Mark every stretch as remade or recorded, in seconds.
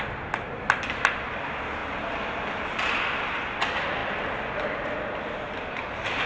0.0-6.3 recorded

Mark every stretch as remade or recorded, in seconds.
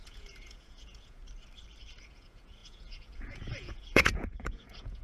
0.0-1.2 remade; 1.2-2.0 recorded; 2.0-5.0 remade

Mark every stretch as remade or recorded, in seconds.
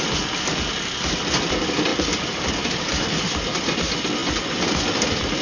0.0-1.9 recorded; 1.9-3.0 remade; 3.0-5.4 recorded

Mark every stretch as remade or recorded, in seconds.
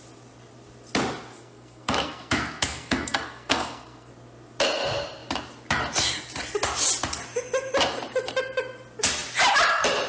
0.0-1.3 recorded; 1.3-4.1 remade; 4.1-10.1 recorded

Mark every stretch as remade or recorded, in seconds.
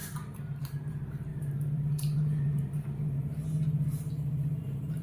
0.0-0.9 recorded; 0.9-3.4 remade; 3.4-4.1 recorded; 4.1-5.0 remade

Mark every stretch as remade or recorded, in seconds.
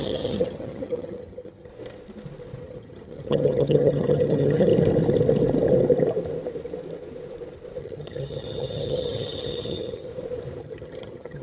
0.0-1.7 remade; 1.7-2.6 recorded; 2.6-4.7 remade; 4.7-7.8 recorded; 7.8-10.1 remade; 10.1-10.6 recorded; 10.6-11.4 remade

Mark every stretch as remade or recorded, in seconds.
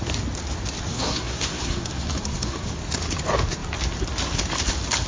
0.0-0.9 recorded; 0.9-2.7 remade; 2.7-5.1 recorded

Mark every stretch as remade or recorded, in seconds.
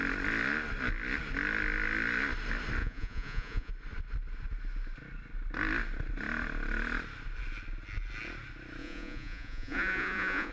0.0-2.8 recorded; 2.8-3.7 remade; 3.7-8.8 recorded; 8.8-10.5 remade